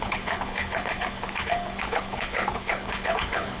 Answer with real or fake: fake